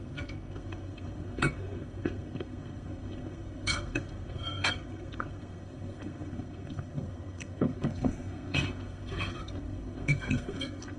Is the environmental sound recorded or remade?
remade